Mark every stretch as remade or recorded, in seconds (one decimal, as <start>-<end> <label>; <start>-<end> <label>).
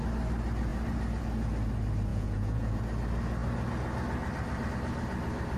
0.0-2.1 recorded; 2.1-2.8 remade; 2.8-5.6 recorded